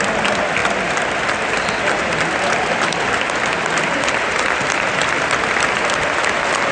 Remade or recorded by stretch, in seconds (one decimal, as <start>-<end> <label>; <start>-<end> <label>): 0.0-6.7 recorded